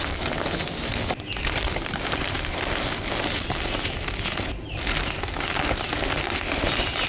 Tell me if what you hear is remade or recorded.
recorded